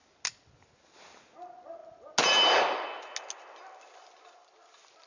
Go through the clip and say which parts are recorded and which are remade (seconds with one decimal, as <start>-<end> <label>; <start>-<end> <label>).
0.0-5.1 recorded